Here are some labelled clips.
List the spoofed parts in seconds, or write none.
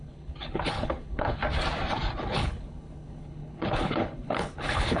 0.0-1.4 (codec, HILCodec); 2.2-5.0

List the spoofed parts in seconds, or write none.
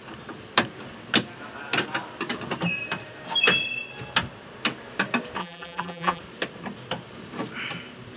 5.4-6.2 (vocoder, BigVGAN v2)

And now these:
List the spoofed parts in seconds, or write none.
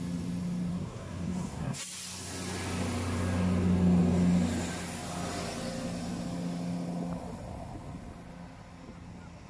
0.7-1.8 (codec, SNAC)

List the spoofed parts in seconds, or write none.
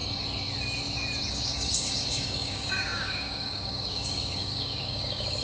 1.3-5.4 (codec, DAC)